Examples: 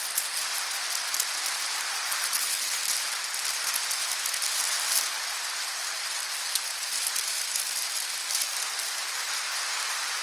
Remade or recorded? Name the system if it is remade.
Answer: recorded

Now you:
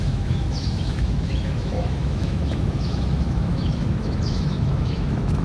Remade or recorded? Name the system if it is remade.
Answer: remade, autoencoder, DAC-VAE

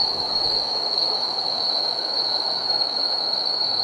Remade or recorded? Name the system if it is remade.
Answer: remade, autoencoder, DAC-VAE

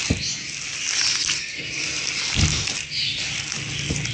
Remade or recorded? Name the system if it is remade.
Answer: recorded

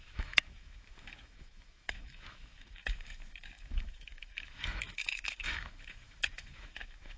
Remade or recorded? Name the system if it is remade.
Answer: remade, autoencoder, DAC-VAE